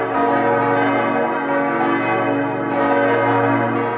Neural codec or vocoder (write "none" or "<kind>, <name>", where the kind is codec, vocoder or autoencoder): none